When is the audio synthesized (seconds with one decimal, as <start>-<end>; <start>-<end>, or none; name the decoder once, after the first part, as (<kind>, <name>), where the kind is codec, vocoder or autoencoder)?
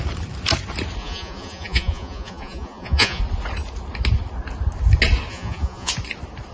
1.0-3.2 (vocoder, Vocos); 5.3-5.9